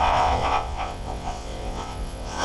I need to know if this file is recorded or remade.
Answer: remade